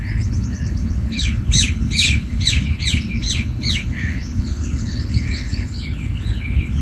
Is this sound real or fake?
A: fake